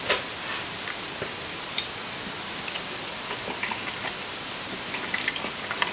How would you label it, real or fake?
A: real